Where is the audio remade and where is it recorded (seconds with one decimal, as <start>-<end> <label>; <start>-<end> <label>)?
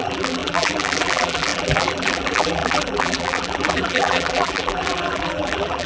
0.0-5.9 remade